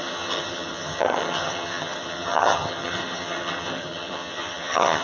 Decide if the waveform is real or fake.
fake